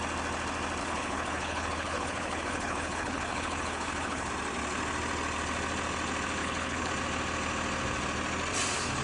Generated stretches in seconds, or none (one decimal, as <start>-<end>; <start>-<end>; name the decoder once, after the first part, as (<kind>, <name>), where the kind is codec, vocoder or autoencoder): 0.8-4.3 (codec, HILCodec); 6.4-6.9